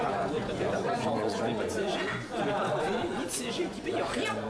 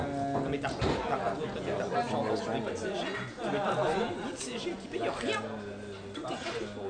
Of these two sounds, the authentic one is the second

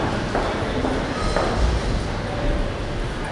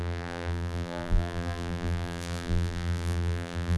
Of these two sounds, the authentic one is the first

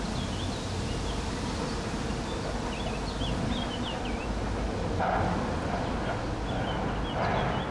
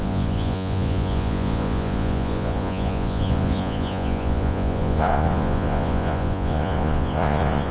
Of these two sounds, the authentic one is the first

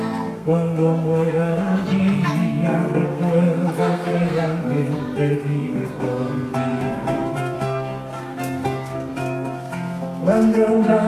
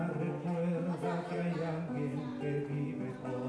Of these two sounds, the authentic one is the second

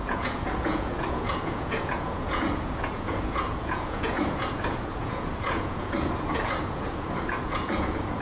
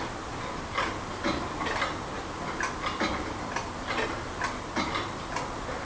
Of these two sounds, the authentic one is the second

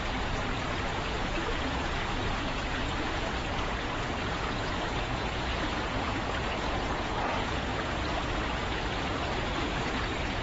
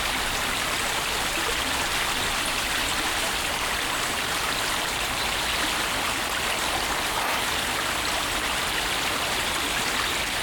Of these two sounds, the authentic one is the second